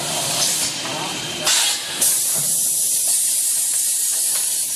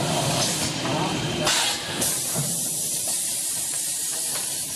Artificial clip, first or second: second